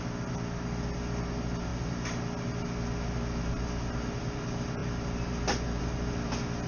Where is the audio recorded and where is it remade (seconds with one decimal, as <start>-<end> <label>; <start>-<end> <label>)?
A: 0.0-6.7 recorded